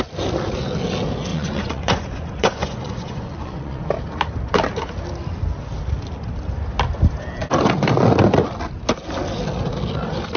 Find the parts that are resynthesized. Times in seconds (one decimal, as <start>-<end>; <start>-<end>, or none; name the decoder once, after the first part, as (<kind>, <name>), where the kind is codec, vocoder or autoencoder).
1.3-3.8 (vocoder, Vocos)